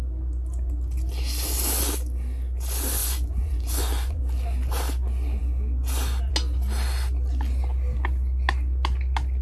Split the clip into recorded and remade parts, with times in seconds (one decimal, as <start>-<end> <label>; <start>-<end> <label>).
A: 0.0-3.0 recorded; 3.0-4.2 remade; 4.2-9.4 recorded